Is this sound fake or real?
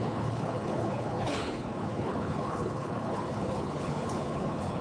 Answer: fake